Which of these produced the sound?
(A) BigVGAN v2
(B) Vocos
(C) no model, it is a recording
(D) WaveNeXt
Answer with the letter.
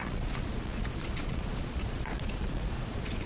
B